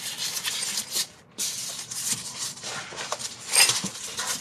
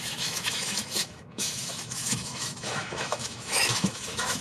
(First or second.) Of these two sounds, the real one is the first